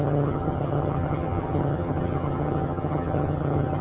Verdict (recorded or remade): remade